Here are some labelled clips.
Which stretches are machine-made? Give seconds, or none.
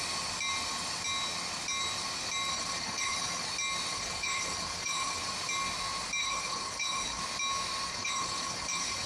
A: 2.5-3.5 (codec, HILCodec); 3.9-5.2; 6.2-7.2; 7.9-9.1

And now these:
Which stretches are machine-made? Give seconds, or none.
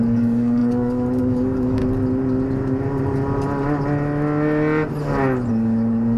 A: 0.0-1.8 (codec, DAC); 5.5-6.2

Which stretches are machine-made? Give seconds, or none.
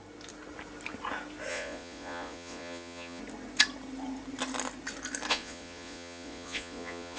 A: 1.5-3.2 (vocoder, Vocos); 5.3-7.2